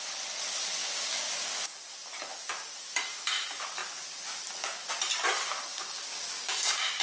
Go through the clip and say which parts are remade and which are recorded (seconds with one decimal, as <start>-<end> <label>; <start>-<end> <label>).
0.0-0.8 recorded; 0.8-1.8 remade; 1.8-5.7 recorded; 5.7-7.0 remade